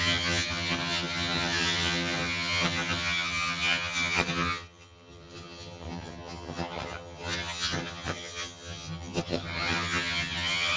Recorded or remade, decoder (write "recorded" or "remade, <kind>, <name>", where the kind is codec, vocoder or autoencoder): remade, vocoder, HiFi-GAN